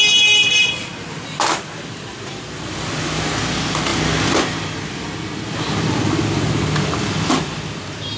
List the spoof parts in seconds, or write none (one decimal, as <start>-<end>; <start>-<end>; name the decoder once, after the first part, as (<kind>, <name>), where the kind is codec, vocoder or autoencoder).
none